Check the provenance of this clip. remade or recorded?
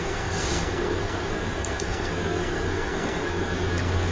remade